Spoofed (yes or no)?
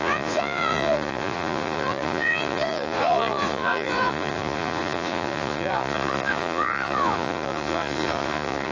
yes